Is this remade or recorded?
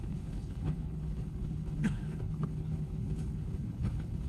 remade